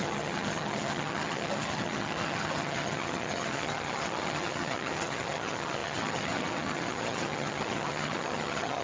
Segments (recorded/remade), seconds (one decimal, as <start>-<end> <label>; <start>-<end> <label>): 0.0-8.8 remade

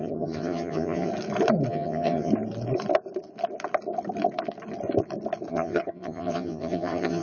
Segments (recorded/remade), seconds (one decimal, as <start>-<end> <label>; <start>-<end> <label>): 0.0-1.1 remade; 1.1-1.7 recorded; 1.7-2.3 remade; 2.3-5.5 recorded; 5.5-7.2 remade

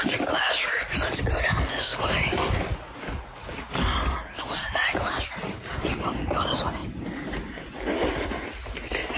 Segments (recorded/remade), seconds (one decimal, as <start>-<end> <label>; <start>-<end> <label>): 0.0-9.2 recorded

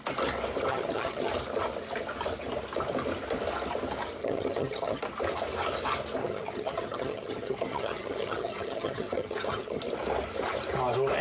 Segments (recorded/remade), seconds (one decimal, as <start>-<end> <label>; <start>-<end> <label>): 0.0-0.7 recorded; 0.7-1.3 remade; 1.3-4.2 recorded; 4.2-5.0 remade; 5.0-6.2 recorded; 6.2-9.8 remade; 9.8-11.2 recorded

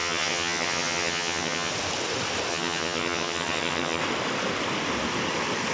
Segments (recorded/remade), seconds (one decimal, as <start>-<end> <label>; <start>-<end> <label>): 0.0-1.7 remade; 1.7-2.5 recorded; 2.5-4.0 remade; 4.0-5.7 recorded

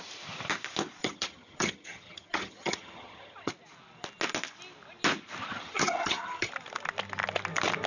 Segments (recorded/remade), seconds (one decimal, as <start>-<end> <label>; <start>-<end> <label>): 0.0-1.0 recorded; 1.0-3.5 remade; 3.5-5.5 recorded; 5.5-6.5 remade; 6.5-7.9 recorded

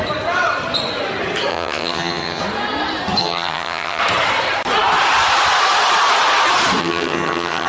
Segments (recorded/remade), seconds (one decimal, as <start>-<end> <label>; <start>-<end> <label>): 0.0-1.5 recorded; 1.5-2.4 remade; 2.4-3.2 recorded; 3.2-4.0 remade; 4.0-6.8 recorded; 6.8-7.7 remade